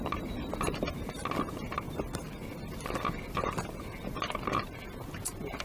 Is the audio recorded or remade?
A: recorded